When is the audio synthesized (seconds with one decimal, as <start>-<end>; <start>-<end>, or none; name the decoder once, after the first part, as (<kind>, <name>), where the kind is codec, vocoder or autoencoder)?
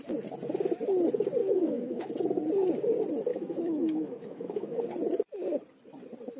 1.4-2.1 (autoencoder, DAC-VAE); 3.3-4.8